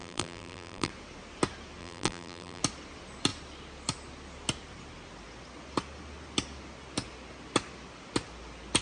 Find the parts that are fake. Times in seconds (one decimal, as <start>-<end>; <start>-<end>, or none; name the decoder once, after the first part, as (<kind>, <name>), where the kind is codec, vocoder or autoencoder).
0.0-0.9 (vocoder, BigVGAN v2); 1.8-2.6